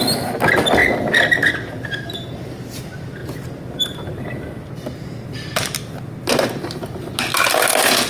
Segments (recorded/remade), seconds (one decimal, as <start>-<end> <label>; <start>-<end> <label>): 0.0-8.1 recorded